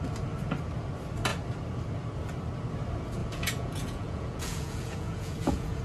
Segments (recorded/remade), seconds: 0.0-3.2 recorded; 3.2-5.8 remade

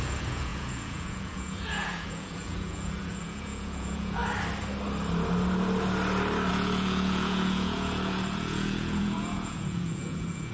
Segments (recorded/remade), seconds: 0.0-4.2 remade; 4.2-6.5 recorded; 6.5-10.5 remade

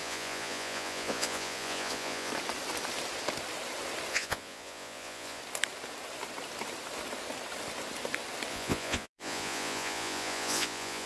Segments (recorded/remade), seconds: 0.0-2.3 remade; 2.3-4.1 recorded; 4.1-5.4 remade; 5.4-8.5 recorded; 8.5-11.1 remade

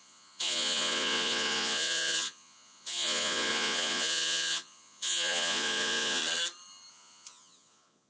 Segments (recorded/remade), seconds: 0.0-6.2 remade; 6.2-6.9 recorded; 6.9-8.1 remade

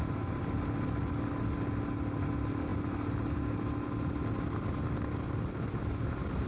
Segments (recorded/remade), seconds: 0.0-6.5 recorded

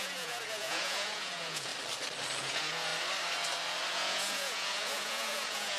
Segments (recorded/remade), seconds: 0.0-1.7 remade; 1.7-2.4 recorded; 2.4-2.9 remade; 2.9-3.9 recorded; 3.9-5.8 remade

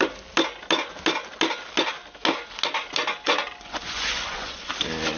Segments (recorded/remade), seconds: 0.0-3.1 recorded; 3.1-4.7 remade; 4.7-5.2 recorded

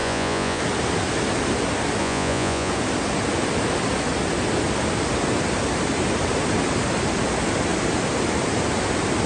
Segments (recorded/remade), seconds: 0.0-0.6 remade; 0.6-2.0 recorded; 2.0-2.7 remade; 2.7-9.3 recorded